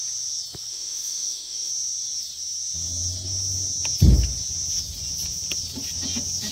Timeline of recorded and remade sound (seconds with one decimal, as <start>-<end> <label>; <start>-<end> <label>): 0.0-0.7 recorded; 0.7-1.7 remade; 1.7-6.5 recorded